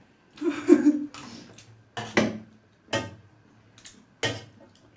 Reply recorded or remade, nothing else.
recorded